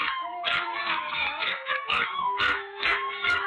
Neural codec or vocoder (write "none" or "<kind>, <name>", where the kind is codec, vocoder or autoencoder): codec, SNAC